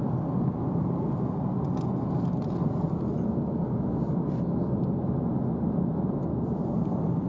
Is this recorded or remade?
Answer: recorded